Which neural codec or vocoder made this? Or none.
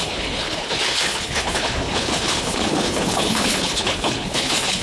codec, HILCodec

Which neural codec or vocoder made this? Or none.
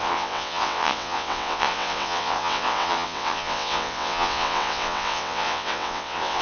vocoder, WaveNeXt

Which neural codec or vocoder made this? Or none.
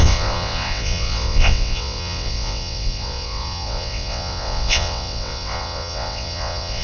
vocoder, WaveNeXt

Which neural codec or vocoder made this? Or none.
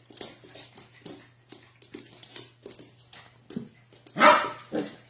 none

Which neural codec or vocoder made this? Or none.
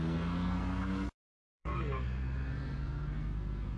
codec, SNAC